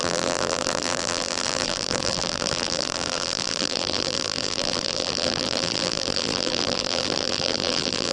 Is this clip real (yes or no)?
no